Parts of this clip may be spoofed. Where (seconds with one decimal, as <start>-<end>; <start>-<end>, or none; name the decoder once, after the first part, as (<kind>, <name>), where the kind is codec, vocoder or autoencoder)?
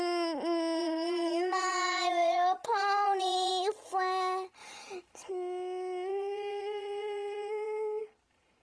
0.8-3.5 (vocoder, Vocos); 6.1-8.0